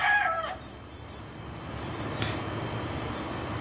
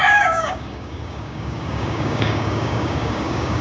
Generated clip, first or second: second